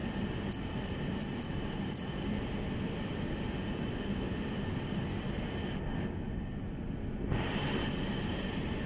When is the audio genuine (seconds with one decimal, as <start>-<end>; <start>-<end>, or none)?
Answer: 0.0-8.9